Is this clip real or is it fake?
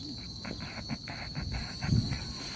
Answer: real